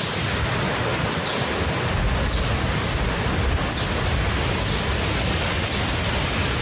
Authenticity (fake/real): real